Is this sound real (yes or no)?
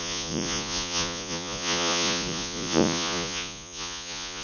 no